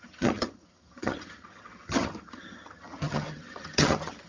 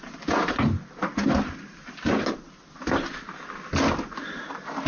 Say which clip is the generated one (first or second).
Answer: first